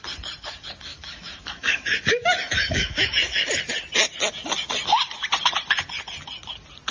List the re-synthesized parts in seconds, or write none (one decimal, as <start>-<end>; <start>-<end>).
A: 0.9-3.6